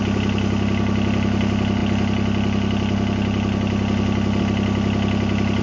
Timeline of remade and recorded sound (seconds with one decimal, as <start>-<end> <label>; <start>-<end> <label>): 0.0-5.6 recorded